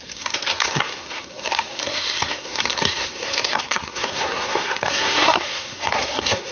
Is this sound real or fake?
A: fake